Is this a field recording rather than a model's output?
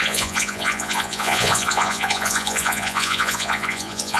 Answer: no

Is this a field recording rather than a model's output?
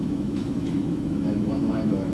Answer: no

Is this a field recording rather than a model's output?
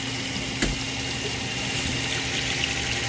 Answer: yes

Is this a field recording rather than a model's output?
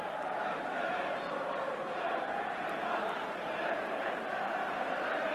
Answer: no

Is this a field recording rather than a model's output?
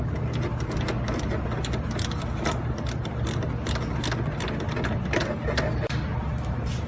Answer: yes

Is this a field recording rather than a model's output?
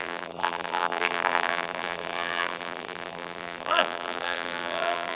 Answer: no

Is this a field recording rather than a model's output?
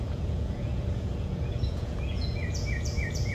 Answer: no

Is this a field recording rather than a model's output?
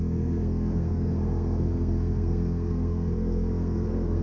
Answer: no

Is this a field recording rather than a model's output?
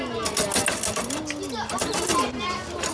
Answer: yes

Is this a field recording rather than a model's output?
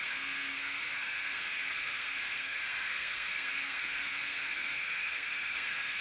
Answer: no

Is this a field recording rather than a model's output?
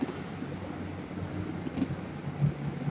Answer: yes